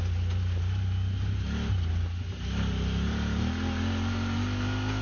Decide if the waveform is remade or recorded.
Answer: recorded